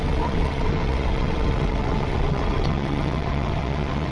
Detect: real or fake fake